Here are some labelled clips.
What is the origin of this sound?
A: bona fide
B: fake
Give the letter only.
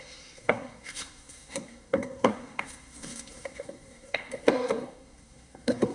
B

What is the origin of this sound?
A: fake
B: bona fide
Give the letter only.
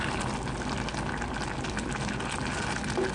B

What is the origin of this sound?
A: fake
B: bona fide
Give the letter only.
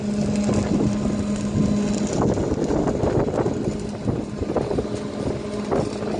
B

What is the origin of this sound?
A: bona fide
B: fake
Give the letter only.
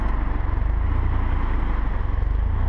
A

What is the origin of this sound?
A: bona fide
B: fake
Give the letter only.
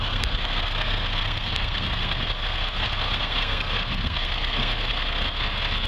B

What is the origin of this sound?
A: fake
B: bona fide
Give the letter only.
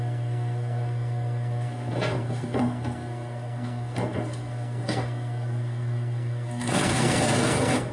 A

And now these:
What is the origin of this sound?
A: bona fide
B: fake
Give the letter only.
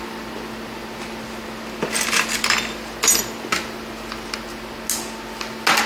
A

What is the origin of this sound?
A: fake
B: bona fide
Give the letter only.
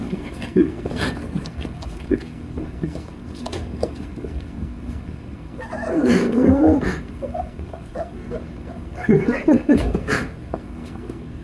A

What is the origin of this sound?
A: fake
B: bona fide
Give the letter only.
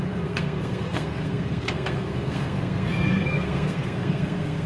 A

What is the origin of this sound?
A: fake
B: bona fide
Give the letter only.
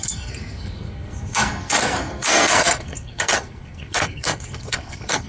A